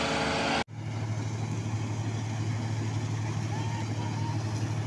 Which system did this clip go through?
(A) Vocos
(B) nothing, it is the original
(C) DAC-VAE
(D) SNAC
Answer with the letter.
B